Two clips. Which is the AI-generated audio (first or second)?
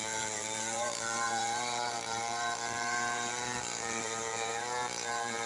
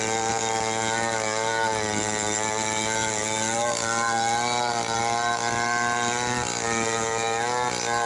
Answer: first